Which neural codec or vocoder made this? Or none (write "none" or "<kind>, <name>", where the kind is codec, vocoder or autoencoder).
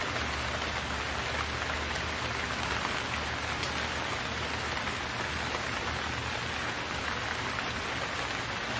none